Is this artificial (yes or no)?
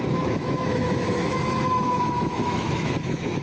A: yes